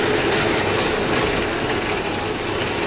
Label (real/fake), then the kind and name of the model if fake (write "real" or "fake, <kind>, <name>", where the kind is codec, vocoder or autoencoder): real